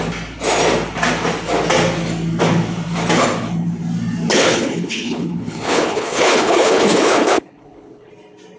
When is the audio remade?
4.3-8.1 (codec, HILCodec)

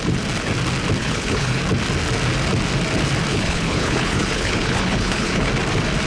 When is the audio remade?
1.0-1.6 (codec, HILCodec); 3.3-5.5

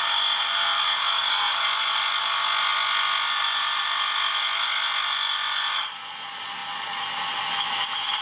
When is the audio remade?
none